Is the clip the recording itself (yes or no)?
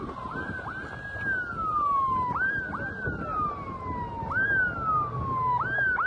yes